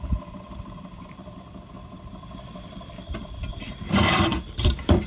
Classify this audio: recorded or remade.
remade